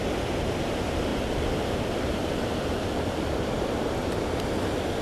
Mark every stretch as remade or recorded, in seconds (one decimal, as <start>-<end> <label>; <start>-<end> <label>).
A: 0.0-1.1 recorded; 1.1-4.1 remade; 4.1-5.0 recorded